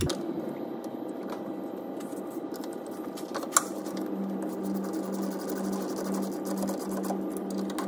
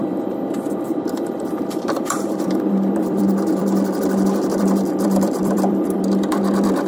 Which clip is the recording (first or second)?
first